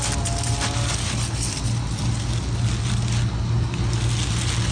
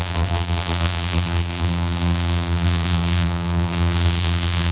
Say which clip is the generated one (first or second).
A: second